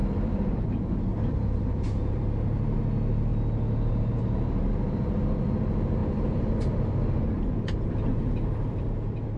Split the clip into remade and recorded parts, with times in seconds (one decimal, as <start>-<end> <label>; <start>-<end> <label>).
0.0-0.6 remade; 0.6-1.1 recorded; 1.1-1.6 remade; 1.6-6.0 recorded; 6.0-6.5 remade; 6.5-9.4 recorded